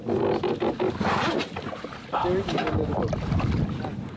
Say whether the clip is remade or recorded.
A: recorded